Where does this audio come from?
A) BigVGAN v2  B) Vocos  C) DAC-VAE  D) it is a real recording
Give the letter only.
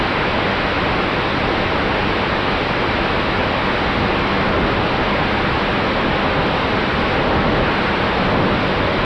D